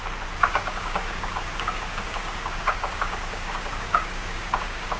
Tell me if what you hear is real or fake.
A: fake